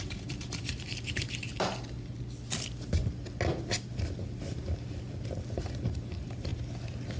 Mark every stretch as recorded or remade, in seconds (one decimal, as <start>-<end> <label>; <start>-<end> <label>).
0.0-1.5 remade; 1.5-5.5 recorded; 5.5-6.5 remade; 6.5-7.2 recorded